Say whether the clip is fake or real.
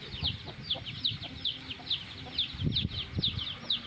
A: real